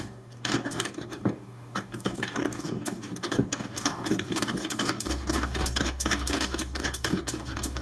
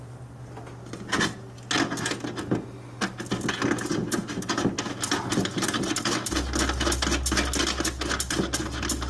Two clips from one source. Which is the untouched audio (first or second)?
second